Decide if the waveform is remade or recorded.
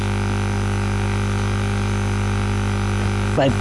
recorded